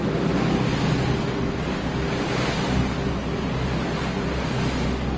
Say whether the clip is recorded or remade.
recorded